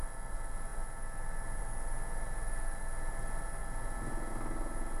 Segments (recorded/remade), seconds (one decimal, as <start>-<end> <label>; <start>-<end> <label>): 0.0-5.0 recorded